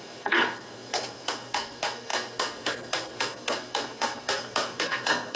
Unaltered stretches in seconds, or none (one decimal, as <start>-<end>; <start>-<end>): none